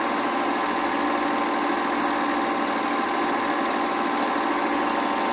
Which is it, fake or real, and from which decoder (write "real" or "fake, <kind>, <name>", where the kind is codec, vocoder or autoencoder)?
real